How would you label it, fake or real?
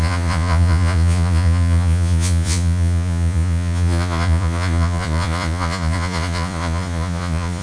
fake